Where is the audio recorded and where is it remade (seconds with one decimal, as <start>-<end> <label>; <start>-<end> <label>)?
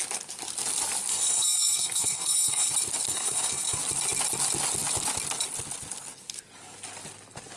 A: 0.0-1.1 recorded; 1.1-2.7 remade; 2.7-3.1 recorded; 3.1-3.8 remade; 3.8-7.6 recorded